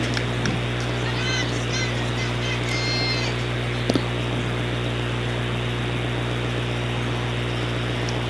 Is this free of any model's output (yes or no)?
yes